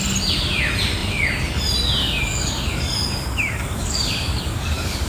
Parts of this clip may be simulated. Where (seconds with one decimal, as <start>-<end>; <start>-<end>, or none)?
2.0-5.1